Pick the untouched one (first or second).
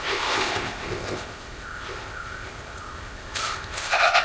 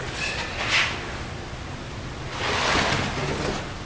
second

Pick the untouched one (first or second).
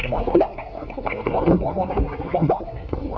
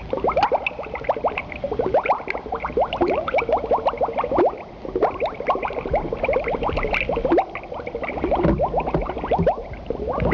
second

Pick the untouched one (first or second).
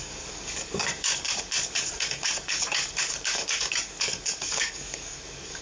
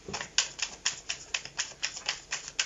second